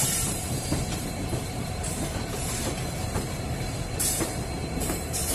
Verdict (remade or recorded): remade